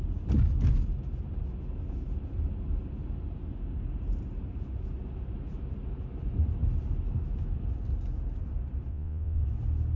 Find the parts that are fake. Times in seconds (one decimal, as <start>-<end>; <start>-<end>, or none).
8.9-9.4